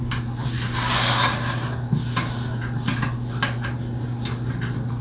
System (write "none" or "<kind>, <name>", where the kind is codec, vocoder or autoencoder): none